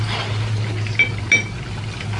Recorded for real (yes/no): yes